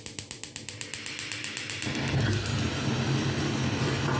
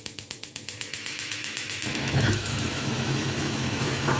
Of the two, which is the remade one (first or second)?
second